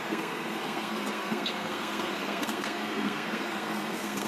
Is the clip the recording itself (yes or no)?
no